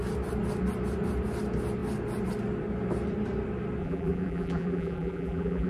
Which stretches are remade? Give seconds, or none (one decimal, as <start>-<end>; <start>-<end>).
3.8-5.7